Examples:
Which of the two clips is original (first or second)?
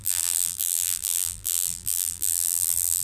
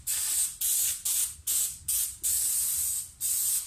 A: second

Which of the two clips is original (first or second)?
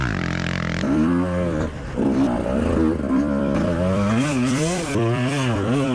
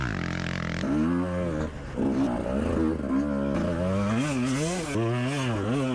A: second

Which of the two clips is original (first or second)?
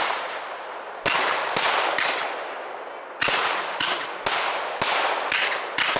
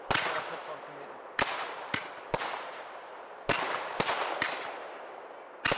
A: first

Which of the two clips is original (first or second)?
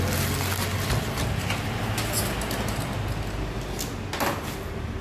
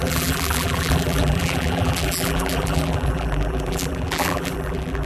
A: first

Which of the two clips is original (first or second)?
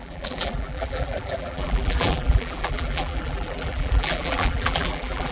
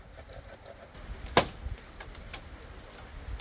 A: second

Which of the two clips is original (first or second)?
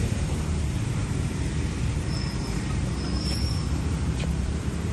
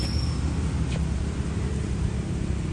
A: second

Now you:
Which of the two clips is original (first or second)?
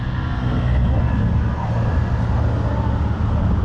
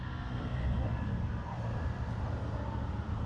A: first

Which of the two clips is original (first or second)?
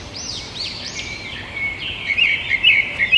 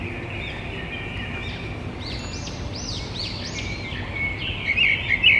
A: second